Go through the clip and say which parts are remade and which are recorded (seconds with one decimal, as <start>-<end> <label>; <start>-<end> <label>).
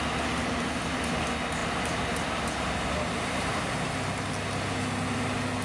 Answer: 0.0-1.6 recorded; 1.6-3.6 remade; 3.6-5.6 recorded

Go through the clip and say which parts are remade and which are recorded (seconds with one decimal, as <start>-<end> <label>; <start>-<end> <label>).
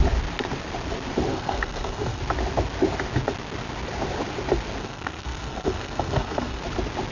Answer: 0.0-1.3 recorded; 1.3-2.2 remade; 2.2-4.8 recorded; 4.8-6.6 remade; 6.6-7.1 recorded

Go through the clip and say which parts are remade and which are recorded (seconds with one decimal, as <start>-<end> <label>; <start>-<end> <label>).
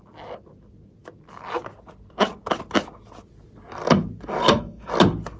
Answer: 0.0-4.4 recorded; 4.4-4.9 remade; 4.9-5.4 recorded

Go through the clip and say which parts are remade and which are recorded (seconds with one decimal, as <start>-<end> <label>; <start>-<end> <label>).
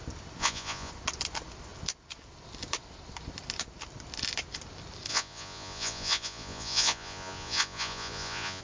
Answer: 0.0-0.4 recorded; 0.4-0.9 remade; 0.9-5.1 recorded; 5.1-8.6 remade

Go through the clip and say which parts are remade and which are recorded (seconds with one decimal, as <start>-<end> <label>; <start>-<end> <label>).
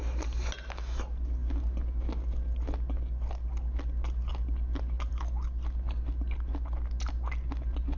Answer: 0.0-8.0 recorded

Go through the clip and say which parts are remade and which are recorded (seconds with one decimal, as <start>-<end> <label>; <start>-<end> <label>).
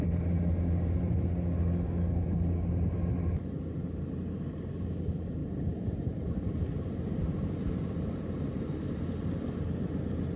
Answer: 0.0-5.4 recorded; 5.4-9.0 remade; 9.0-10.4 recorded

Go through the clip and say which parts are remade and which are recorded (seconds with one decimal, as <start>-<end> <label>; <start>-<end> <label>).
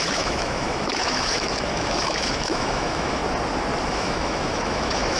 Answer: 0.0-3.2 remade; 3.2-3.9 recorded; 3.9-5.2 remade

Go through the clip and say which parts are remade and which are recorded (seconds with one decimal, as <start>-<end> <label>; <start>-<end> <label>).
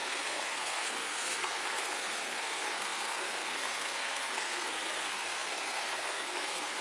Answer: 0.0-6.8 remade